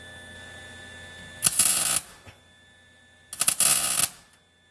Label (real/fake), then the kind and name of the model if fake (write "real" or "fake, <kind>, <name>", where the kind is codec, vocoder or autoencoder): real